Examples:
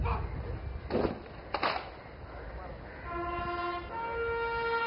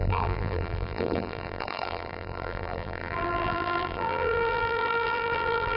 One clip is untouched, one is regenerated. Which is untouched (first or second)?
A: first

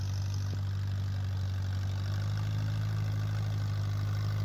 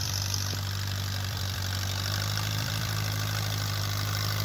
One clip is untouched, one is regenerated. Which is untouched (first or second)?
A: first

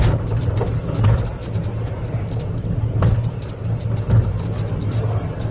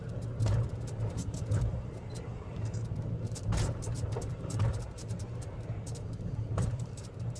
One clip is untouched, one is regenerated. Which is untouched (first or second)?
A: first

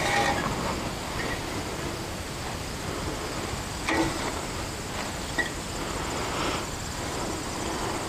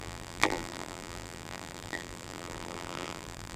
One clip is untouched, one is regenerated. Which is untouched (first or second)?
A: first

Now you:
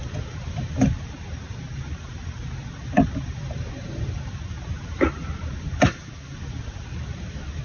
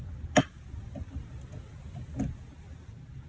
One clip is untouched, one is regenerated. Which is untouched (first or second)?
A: second